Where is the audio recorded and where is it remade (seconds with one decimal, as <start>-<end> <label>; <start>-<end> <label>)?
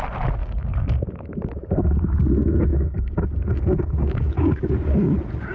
0.0-0.4 recorded; 0.4-1.3 remade; 1.3-2.7 recorded; 2.7-5.1 remade; 5.1-5.5 recorded